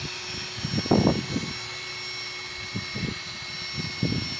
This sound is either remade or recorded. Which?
recorded